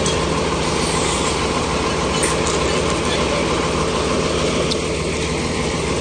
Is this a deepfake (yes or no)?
no